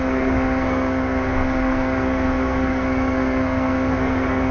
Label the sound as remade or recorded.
remade